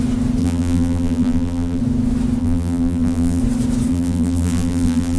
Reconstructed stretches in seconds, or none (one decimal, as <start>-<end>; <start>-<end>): 0.4-1.8; 2.4-3.4; 3.9-5.2